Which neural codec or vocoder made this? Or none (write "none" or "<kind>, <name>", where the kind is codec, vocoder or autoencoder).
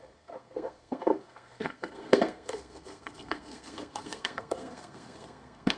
codec, SNAC